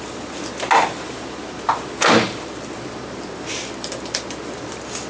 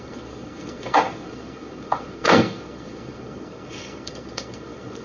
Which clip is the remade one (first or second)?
second